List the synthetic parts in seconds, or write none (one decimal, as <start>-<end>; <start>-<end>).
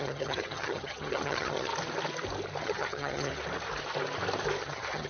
0.0-1.7; 2.6-3.3; 4.6-5.1